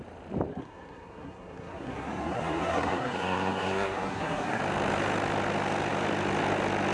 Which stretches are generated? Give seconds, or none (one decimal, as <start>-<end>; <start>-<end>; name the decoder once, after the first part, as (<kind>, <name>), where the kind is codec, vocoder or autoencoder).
0.5-4.6 (codec, SNAC)